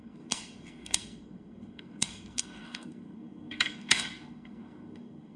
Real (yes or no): no